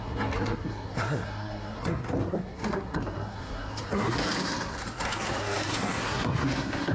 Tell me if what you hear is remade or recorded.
remade